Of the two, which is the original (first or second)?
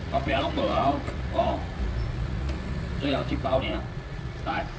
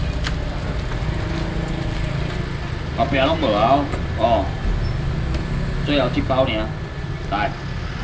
second